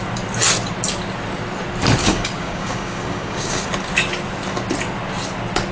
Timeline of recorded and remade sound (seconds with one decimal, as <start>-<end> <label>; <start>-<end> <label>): 0.0-2.0 recorded; 2.0-3.7 remade; 3.7-5.7 recorded